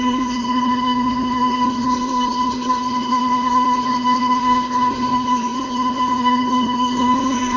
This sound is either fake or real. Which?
fake